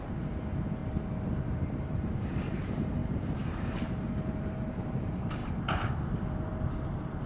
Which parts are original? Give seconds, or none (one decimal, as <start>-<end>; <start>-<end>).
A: 0.8-1.3; 5.4-5.9